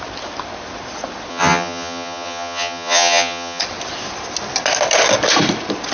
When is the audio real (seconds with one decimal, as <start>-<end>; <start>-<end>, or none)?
0.0-1.3; 3.6-5.9